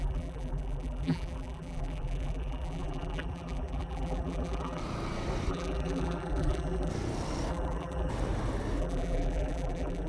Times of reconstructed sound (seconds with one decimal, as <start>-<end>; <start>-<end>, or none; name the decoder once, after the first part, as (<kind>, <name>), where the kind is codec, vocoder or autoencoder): 0.0-4.8 (vocoder, BigVGAN v2); 5.5-6.9; 7.5-8.1; 8.8-10.1